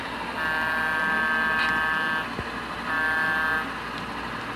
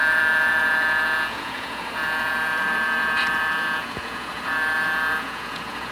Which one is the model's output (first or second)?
second